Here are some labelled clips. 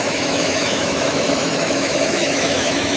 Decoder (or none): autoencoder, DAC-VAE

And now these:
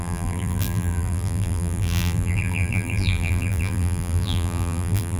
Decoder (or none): vocoder, BigVGAN v2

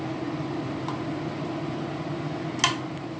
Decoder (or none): none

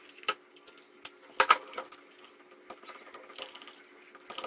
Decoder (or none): none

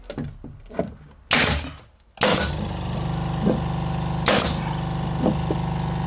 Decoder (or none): none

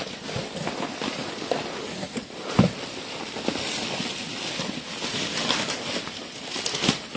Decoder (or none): none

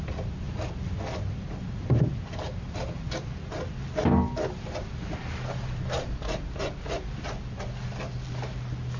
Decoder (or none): none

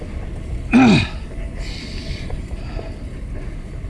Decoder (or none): none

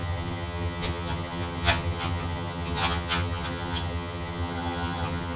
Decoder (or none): vocoder, HiFi-GAN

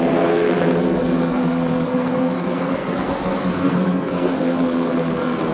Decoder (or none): codec, SNAC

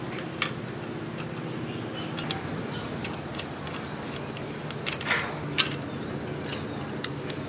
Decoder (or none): none